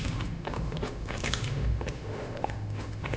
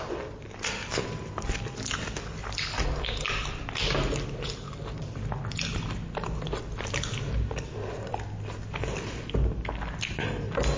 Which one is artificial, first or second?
first